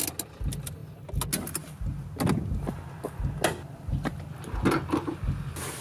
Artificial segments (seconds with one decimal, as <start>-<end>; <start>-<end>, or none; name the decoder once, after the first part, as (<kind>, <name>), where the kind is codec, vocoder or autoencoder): none